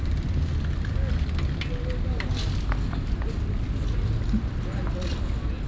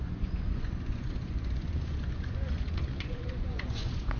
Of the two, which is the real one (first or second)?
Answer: first